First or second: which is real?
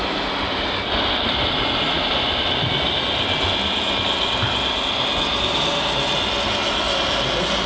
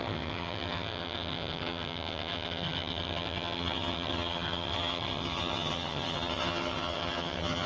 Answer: first